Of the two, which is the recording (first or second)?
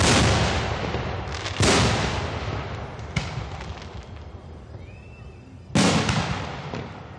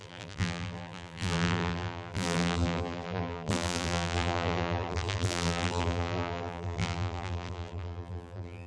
first